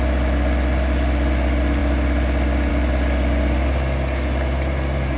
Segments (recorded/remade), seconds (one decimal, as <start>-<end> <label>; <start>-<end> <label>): 0.0-5.2 recorded